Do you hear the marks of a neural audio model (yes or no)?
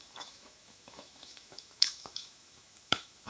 yes